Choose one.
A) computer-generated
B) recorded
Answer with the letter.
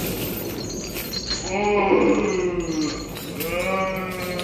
B